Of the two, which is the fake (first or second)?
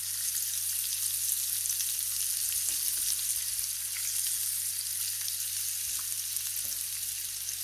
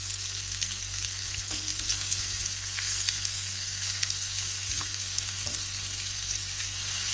second